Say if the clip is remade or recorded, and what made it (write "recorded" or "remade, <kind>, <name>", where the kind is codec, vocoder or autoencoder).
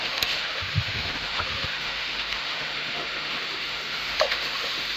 remade, autoencoder, DAC-VAE